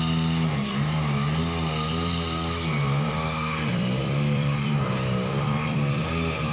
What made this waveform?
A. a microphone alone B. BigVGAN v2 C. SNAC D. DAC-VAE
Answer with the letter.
B